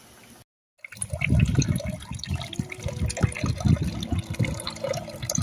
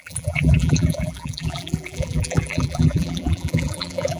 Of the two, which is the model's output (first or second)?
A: second